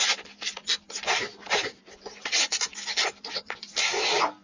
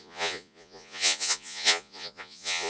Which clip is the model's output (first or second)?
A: second